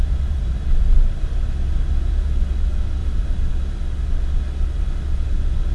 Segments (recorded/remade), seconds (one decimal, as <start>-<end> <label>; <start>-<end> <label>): 0.0-1.2 remade; 1.2-3.0 recorded; 3.0-3.5 remade; 3.5-5.7 recorded